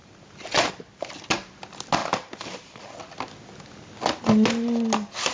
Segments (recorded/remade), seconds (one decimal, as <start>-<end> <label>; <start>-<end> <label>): 0.0-0.7 remade; 0.7-2.0 recorded; 2.0-2.8 remade; 2.8-5.3 recorded